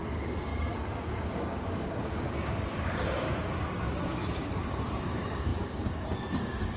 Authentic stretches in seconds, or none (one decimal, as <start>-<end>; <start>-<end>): none